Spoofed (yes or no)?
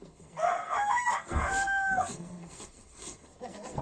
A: yes